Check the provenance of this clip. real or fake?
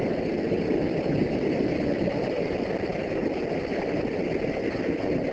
real